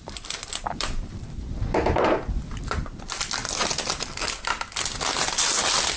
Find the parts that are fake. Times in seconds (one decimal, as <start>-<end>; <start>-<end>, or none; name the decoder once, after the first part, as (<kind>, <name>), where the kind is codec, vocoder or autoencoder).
0.0-3.4 (vocoder, BigVGAN v2); 4.8-6.0